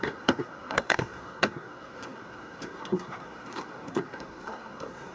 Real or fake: fake